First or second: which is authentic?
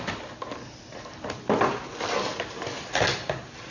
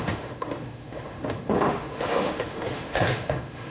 first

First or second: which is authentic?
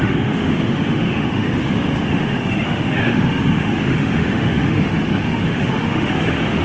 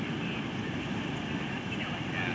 second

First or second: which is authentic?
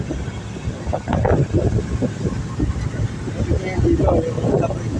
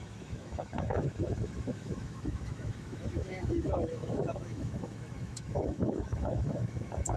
first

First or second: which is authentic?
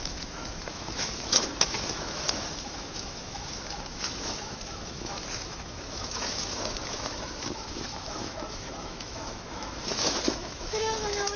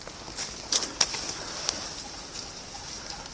second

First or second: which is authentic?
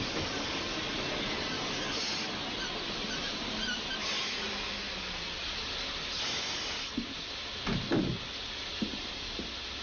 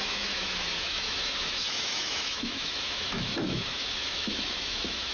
first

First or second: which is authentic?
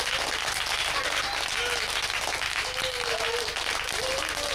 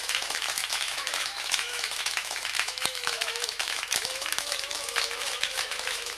first